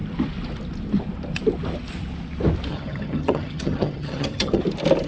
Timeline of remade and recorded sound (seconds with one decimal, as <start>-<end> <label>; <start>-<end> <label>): 0.0-2.7 recorded; 2.7-4.6 remade; 4.6-5.1 recorded